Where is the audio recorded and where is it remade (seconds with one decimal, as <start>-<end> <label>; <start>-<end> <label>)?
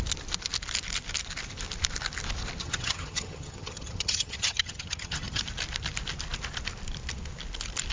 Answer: 0.0-2.6 recorded; 2.6-5.4 remade; 5.4-7.9 recorded